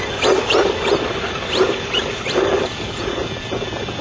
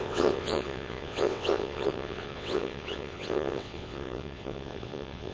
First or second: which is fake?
second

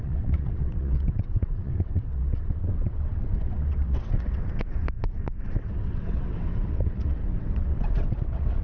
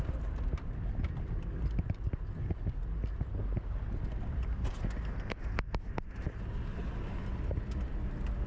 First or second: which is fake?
first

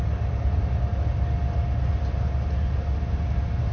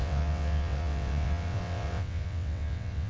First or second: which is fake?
second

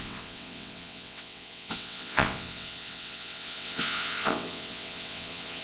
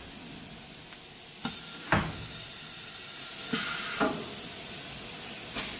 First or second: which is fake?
first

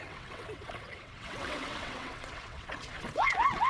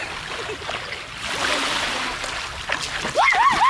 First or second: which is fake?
first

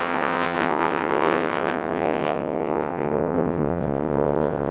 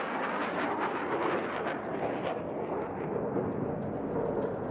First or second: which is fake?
first